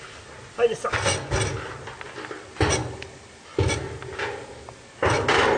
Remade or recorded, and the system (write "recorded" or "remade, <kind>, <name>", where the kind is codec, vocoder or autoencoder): recorded